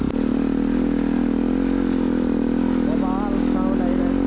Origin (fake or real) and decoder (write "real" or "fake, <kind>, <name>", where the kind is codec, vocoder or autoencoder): real